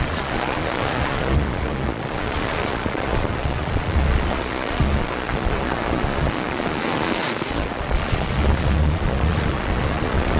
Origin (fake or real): fake